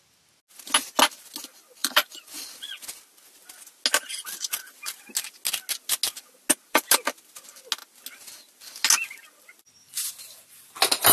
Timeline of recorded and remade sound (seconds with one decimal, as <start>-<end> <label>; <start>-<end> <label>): 0.0-1.8 recorded; 1.8-2.6 remade; 2.6-11.1 recorded